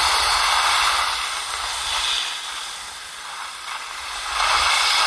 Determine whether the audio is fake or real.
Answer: real